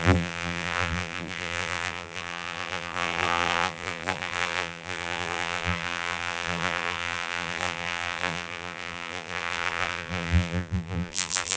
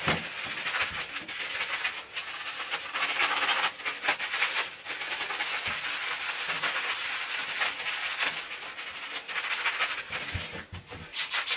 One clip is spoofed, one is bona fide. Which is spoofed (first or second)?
first